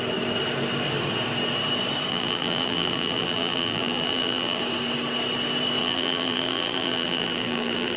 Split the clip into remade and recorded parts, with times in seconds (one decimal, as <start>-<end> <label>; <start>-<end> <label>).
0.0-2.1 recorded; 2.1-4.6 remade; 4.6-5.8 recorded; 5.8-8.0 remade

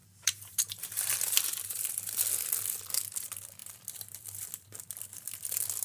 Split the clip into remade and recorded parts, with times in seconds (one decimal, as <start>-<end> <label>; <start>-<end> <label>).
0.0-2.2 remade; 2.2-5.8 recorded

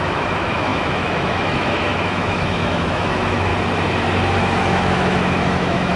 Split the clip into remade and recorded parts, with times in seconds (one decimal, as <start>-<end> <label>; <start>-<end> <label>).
0.0-3.5 remade; 3.5-4.6 recorded; 4.6-6.0 remade